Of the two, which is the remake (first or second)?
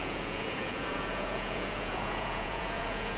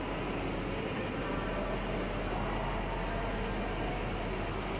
first